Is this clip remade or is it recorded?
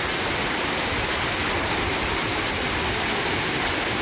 recorded